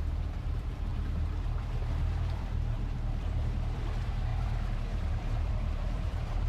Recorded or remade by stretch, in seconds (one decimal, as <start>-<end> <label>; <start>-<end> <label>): 0.0-6.5 remade